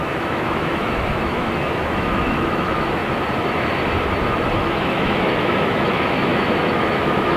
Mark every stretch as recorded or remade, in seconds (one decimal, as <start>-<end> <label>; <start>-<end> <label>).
0.0-3.0 remade; 3.0-4.6 recorded; 4.6-7.4 remade

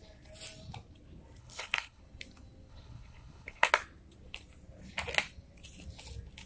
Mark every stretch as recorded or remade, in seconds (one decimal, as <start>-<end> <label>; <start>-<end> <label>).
0.0-1.4 recorded; 1.4-2.0 remade; 2.0-2.7 recorded; 2.7-3.7 remade; 3.7-6.5 recorded

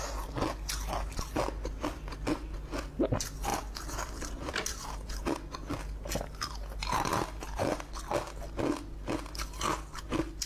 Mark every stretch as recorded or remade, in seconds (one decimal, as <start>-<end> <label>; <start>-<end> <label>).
0.0-3.5 recorded; 3.5-4.5 remade; 4.5-10.5 recorded

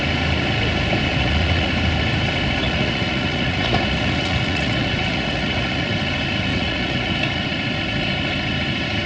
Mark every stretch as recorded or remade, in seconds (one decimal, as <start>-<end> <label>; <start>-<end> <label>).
0.0-1.1 recorded; 1.1-1.7 remade; 1.7-2.6 recorded; 2.6-5.9 remade; 5.9-6.5 recorded; 6.5-7.1 remade; 7.1-9.1 recorded

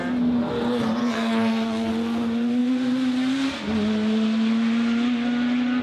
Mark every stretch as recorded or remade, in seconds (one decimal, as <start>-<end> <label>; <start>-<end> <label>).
0.0-1.0 recorded; 1.0-1.9 remade; 1.9-5.8 recorded

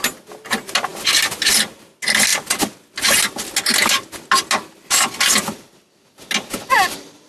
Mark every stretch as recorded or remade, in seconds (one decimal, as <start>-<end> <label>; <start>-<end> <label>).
0.0-7.3 recorded